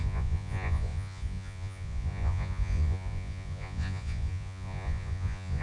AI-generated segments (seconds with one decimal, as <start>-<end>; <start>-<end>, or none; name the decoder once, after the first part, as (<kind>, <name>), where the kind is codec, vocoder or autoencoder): 0.0-5.6 (vocoder, Vocos)